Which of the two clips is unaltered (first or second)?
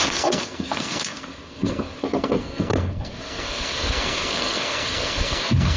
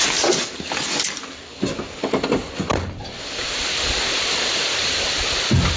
second